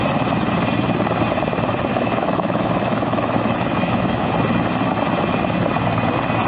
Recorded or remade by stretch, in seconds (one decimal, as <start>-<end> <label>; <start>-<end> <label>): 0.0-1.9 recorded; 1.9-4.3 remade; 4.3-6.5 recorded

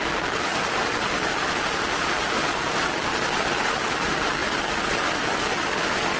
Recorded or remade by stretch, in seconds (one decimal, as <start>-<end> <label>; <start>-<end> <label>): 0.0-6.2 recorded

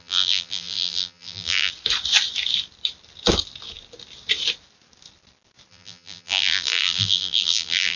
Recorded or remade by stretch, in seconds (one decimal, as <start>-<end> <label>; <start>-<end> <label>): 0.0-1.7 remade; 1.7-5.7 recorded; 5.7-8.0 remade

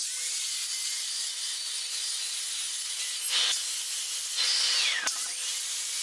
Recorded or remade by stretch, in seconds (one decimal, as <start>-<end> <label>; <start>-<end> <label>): 0.0-6.0 recorded

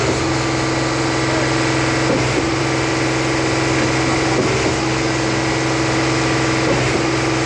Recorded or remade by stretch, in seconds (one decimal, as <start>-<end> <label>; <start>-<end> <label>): 0.0-7.5 recorded

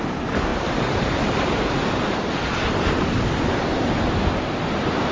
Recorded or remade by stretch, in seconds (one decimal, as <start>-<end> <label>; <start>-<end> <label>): 0.0-5.1 recorded

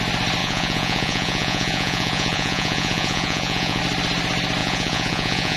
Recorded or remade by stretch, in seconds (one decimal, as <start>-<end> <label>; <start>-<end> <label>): 0.0-0.4 recorded; 0.4-3.8 remade; 3.8-4.6 recorded; 4.6-5.6 remade

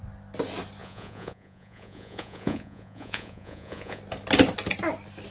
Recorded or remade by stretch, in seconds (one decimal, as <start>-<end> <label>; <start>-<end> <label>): 0.0-0.8 recorded; 0.8-4.0 remade; 4.0-5.3 recorded